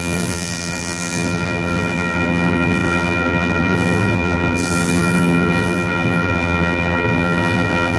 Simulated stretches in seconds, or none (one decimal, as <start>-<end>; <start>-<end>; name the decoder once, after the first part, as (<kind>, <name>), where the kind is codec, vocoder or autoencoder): 0.0-8.0 (vocoder, BigVGAN v2)

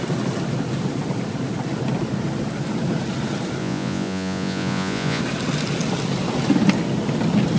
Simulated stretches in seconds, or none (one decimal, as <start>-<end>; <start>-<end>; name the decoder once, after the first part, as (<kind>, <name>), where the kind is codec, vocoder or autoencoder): 3.6-5.2 (vocoder, Vocos)

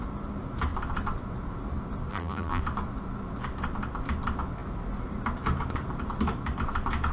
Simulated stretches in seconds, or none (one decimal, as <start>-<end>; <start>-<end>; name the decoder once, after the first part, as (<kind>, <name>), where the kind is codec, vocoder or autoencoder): 2.1-2.6 (vocoder, BigVGAN v2)